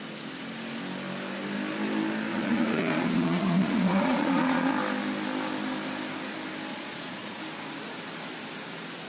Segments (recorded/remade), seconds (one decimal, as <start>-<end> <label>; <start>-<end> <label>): 0.0-2.3 recorded; 2.3-4.7 remade; 4.7-6.7 recorded; 6.7-7.4 remade; 7.4-9.1 recorded